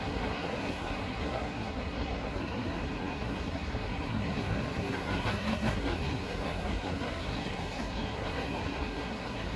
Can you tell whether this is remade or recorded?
remade